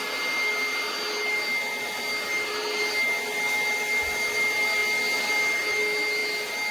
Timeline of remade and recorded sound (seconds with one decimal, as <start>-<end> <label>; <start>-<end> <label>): 0.0-6.7 recorded